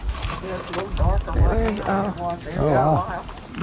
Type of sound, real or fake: real